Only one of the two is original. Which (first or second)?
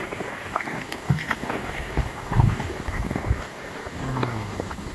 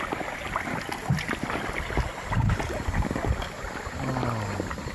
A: second